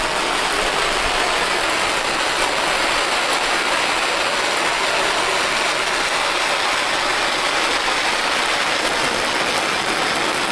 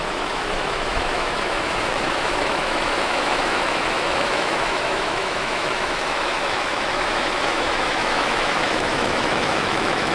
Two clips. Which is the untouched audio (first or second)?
first